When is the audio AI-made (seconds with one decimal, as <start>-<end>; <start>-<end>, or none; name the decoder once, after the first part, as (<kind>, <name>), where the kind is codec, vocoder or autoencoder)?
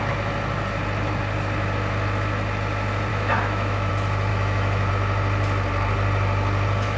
3.1-3.9 (autoencoder, DAC-VAE); 4.3-4.9